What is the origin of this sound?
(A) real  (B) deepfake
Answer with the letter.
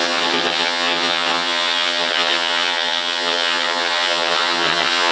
B